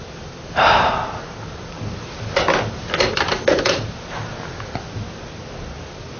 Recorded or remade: recorded